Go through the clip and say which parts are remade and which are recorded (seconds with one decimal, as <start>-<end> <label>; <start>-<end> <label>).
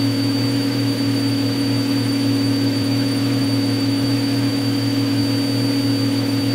0.0-5.2 remade; 5.2-6.0 recorded; 6.0-6.5 remade